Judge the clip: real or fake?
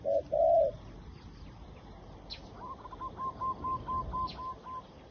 real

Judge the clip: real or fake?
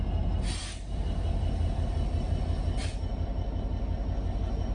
real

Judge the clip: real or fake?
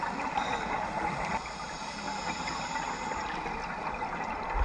real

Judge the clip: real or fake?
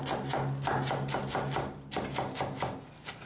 fake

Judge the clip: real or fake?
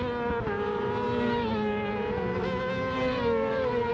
real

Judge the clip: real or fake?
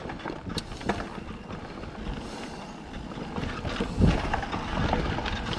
real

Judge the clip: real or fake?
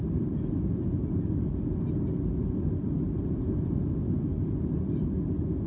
real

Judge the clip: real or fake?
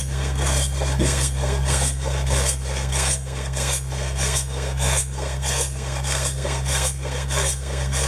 fake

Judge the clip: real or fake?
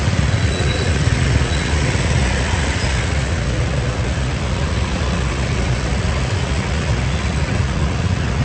fake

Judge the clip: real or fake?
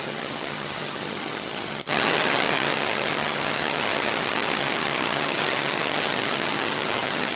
fake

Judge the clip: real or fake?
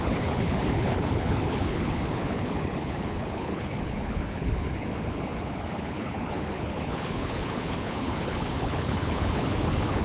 fake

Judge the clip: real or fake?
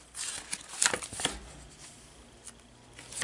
real